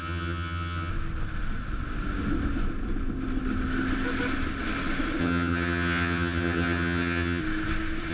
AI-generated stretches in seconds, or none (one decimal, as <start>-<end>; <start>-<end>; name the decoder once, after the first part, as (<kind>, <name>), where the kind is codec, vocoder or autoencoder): 0.0-0.9 (vocoder, HiFi-GAN); 5.2-7.4